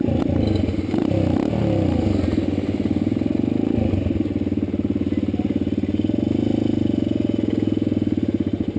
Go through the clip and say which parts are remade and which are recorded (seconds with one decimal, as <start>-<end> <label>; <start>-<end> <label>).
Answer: 0.0-8.8 recorded